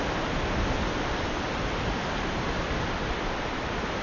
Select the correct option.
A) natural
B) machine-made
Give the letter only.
A